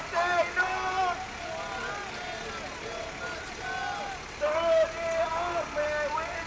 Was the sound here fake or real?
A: real